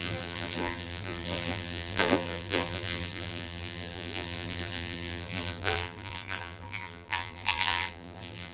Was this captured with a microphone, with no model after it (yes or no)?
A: no